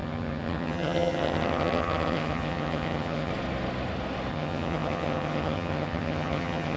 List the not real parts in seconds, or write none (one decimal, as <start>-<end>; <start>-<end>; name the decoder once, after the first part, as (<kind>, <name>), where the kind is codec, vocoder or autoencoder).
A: 0.0-3.3 (vocoder, HiFi-GAN); 4.3-6.8